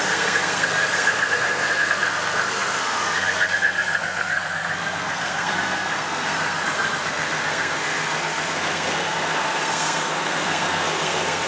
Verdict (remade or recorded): remade